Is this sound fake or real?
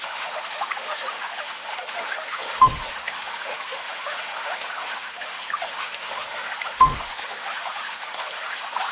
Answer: fake